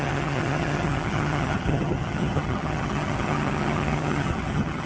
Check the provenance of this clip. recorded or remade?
remade